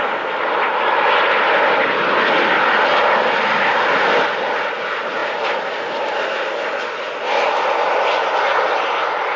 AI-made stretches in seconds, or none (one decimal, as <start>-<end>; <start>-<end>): none